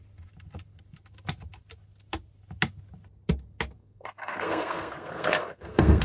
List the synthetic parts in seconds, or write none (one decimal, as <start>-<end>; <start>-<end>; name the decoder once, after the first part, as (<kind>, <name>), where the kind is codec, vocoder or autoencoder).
3.8-6.0 (codec, SNAC)